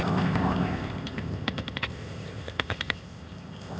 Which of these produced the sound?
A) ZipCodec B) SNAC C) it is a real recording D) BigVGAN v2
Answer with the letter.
A